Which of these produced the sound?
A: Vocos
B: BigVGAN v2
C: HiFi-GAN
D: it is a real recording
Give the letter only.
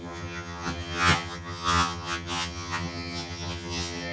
C